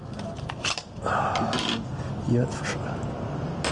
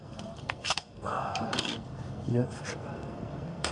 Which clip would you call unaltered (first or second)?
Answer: first